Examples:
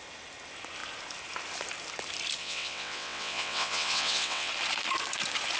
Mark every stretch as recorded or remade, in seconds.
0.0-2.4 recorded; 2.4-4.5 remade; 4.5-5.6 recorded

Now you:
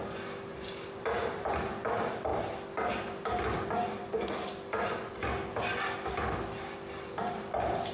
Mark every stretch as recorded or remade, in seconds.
0.0-0.5 recorded; 0.5-1.7 remade; 1.7-7.9 recorded

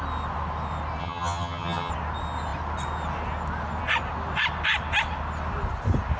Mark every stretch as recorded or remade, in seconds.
0.0-1.0 recorded; 1.0-1.9 remade; 1.9-6.2 recorded

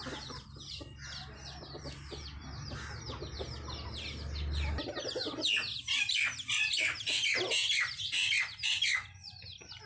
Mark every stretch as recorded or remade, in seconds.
0.0-9.9 recorded

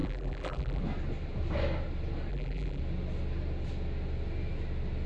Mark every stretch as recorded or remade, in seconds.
0.0-0.8 remade; 0.8-2.3 recorded; 2.3-2.8 remade; 2.8-5.1 recorded